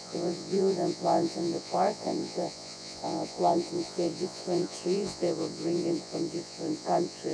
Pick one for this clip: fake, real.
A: fake